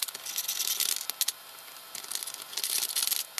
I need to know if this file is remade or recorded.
recorded